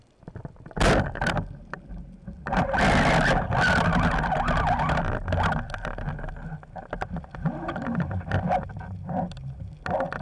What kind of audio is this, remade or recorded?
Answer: recorded